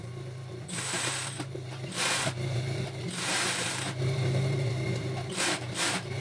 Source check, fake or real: fake